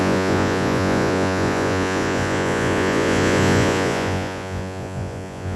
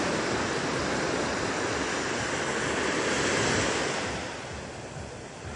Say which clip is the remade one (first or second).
first